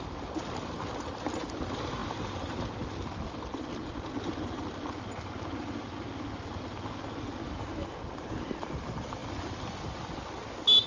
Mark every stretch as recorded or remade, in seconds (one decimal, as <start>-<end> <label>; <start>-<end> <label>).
0.0-7.4 recorded; 7.4-8.0 remade; 8.0-10.9 recorded